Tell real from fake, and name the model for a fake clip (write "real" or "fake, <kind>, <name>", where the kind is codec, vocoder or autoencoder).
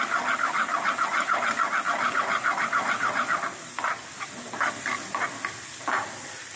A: real